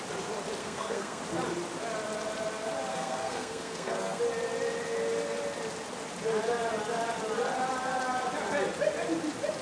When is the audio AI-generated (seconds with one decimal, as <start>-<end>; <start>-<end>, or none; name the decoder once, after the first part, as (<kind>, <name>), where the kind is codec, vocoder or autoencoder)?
0.6-1.2 (codec, SNAC); 2.9-4.2